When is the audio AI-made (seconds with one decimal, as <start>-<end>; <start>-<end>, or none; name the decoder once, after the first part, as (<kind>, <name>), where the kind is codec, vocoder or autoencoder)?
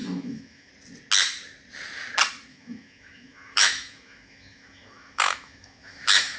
0.0-0.7 (autoencoder, DAC-VAE); 2.5-6.4